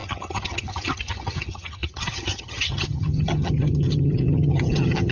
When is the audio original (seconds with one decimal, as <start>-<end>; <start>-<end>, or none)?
none